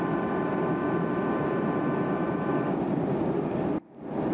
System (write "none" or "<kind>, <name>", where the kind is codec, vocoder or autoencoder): none